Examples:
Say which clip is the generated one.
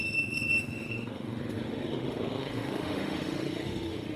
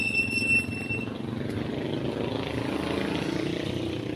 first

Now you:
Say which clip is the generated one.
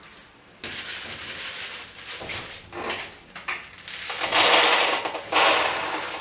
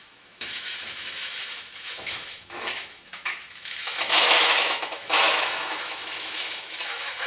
second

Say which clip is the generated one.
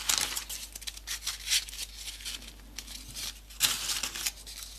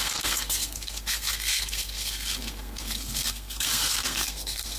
second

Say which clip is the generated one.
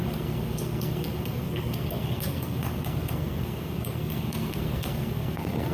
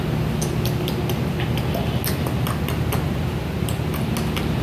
first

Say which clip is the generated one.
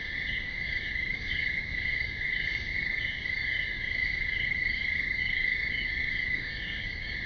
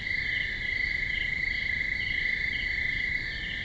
first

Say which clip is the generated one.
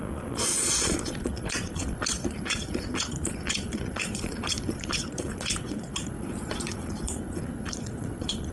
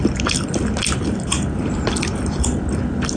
first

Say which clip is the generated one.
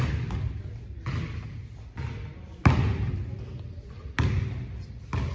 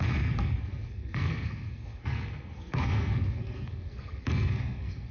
second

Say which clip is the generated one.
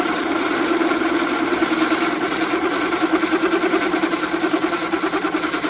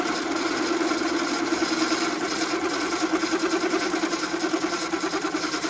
first